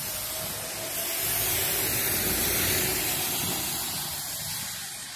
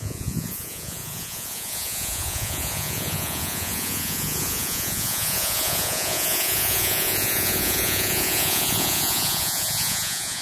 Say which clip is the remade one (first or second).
second